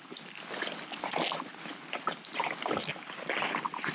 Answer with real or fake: real